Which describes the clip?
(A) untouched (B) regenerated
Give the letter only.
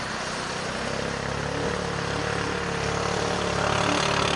A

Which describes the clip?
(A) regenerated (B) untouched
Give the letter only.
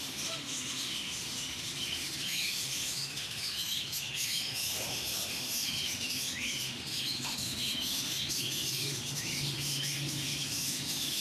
A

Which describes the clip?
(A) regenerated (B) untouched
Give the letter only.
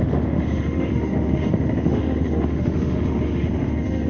A